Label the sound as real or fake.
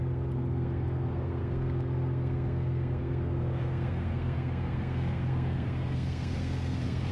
fake